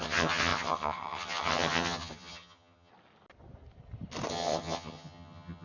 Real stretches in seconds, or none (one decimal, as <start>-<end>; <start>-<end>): 2.9-4.3